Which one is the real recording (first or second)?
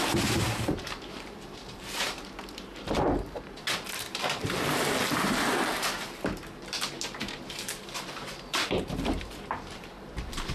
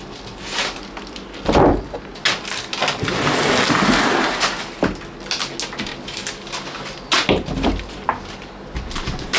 second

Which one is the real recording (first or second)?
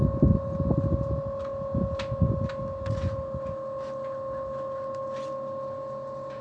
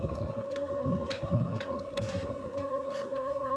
first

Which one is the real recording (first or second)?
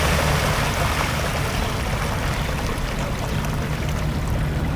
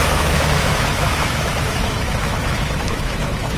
first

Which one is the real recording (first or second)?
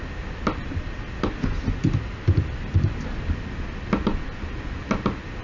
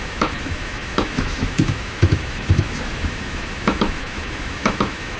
first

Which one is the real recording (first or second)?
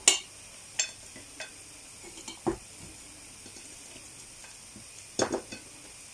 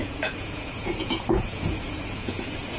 first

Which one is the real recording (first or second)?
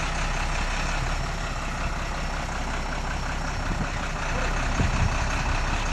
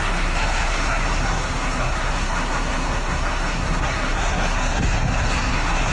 first